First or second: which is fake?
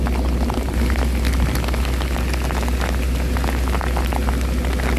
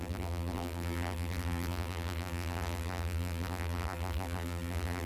second